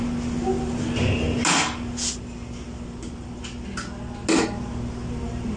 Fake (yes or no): no